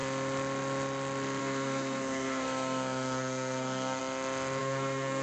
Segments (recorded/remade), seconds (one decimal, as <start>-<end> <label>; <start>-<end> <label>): 0.0-1.4 recorded; 1.4-4.0 remade; 4.0-4.6 recorded; 4.6-5.2 remade